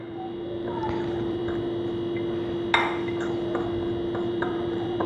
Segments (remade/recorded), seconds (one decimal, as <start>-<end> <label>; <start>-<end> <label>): 0.0-1.4 remade; 1.4-4.2 recorded; 4.2-5.1 remade